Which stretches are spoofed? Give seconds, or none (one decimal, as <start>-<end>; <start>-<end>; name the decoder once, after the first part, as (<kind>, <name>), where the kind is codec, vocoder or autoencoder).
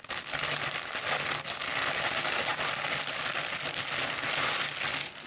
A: none